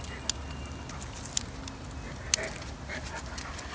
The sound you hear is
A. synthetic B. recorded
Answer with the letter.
B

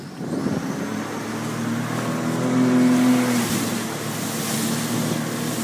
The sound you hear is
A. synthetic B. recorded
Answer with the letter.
B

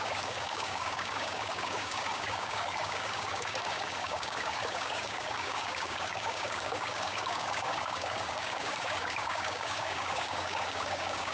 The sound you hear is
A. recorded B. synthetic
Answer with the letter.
B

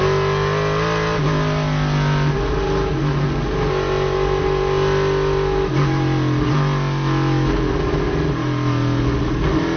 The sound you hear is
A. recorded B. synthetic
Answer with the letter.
A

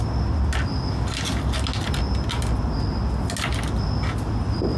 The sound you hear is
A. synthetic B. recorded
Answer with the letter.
B